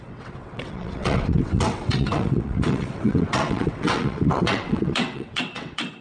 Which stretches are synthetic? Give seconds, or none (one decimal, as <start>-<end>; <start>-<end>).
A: 0.0-6.0